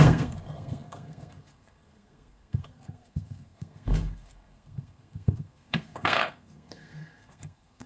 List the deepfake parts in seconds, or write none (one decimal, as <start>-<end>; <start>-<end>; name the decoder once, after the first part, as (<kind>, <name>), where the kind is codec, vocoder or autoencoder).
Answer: 0.0-7.9 (codec, SNAC)